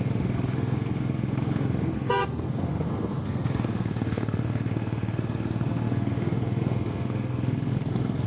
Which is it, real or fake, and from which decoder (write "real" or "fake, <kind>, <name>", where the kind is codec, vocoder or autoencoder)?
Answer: fake, codec, SNAC